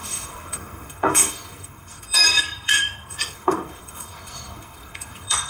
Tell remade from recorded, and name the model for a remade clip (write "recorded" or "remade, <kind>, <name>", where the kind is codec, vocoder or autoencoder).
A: remade, codec, SNAC